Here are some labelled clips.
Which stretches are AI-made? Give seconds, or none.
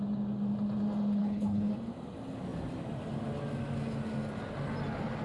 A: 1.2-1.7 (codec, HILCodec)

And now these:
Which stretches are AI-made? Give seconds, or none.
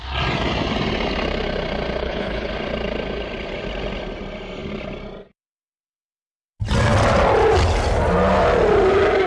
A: 2.0-2.5 (codec, HILCodec)